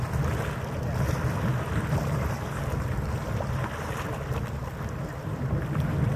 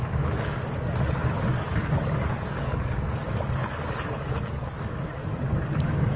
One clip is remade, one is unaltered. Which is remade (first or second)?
second